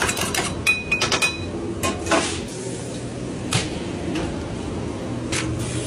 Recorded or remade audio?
recorded